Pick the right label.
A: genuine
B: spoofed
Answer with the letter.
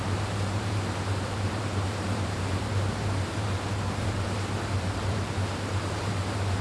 B